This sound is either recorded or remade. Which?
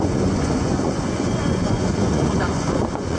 remade